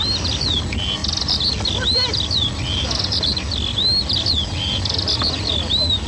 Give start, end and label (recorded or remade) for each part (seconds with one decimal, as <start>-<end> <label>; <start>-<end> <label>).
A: 0.0-6.1 recorded